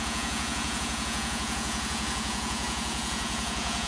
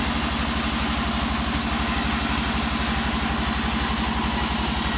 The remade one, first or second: first